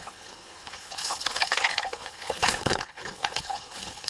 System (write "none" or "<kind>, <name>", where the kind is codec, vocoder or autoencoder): codec, HILCodec